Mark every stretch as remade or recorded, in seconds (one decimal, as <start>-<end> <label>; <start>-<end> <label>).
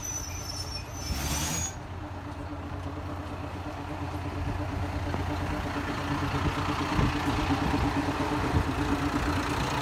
0.0-2.4 recorded; 2.4-2.9 remade; 2.9-9.8 recorded